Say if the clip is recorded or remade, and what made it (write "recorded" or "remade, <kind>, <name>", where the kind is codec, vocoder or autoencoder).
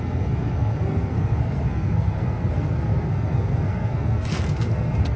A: remade, codec, SNAC